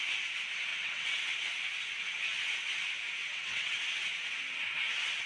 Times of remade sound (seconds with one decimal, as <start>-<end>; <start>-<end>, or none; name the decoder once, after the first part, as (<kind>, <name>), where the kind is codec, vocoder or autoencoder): 0.7-1.2 (vocoder, WaveNeXt); 3.2-3.8